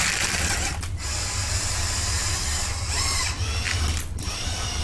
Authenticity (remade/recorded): recorded